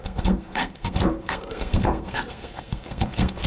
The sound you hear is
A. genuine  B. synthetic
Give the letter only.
B